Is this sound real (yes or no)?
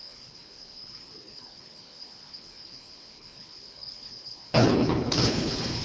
no